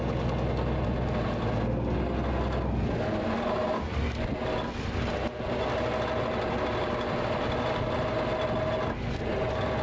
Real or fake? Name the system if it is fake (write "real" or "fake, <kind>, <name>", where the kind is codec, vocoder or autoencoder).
real